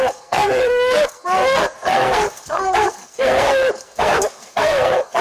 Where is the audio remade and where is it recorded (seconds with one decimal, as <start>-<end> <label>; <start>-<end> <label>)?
0.0-5.2 remade